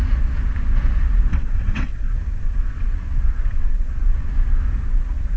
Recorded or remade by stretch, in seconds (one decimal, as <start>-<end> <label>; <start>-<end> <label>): 0.0-1.3 recorded; 1.3-4.3 remade; 4.3-5.4 recorded